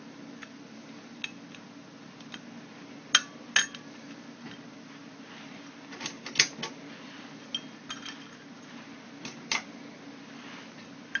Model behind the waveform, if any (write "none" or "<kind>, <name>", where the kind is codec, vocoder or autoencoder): none